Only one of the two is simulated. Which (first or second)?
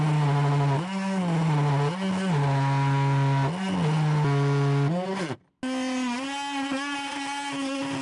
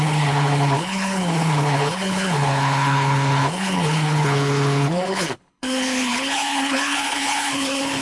second